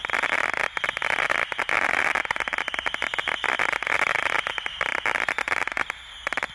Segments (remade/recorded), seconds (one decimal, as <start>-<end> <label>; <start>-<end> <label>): 0.0-6.5 recorded